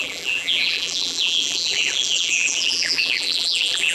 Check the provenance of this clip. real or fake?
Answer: fake